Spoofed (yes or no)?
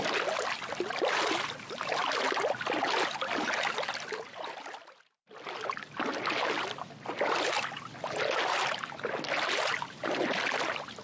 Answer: no